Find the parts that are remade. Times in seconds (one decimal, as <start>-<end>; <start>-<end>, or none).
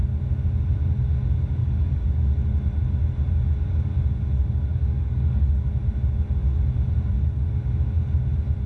1.6-2.4; 4.7-5.5